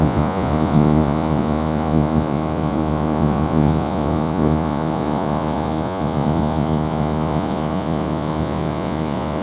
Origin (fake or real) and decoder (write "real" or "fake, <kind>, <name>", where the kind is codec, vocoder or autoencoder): fake, vocoder, Vocos